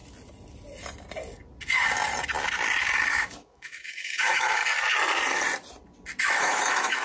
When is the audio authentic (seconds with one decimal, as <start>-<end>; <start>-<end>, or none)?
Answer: 0.0-3.1; 4.6-6.2